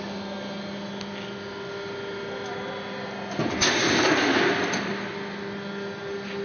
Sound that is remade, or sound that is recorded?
recorded